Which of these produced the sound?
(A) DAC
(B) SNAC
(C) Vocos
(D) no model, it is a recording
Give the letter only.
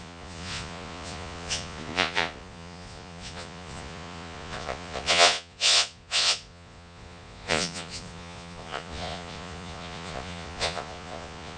C